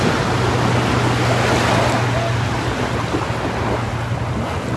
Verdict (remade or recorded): recorded